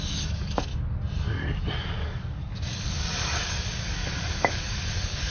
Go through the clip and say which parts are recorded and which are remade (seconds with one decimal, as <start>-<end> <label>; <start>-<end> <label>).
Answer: 0.0-0.7 remade; 0.7-1.8 recorded; 1.8-5.3 remade